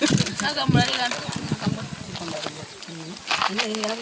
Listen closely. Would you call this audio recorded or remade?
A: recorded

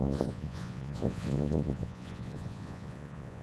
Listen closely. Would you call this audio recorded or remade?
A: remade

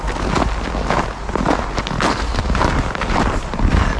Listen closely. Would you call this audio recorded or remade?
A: recorded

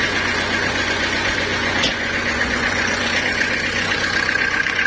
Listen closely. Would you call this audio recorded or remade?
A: remade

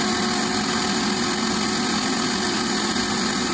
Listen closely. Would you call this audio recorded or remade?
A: recorded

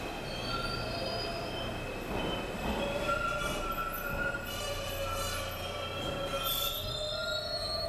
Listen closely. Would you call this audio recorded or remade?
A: recorded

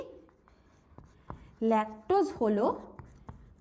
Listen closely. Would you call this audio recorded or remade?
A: remade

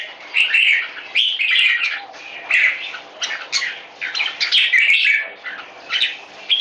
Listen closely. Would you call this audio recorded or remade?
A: recorded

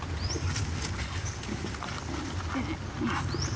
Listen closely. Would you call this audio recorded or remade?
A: recorded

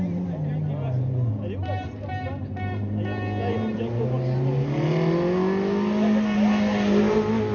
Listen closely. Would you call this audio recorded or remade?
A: recorded